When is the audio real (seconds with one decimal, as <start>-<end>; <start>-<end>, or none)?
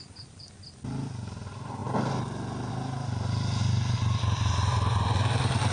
0.0-5.7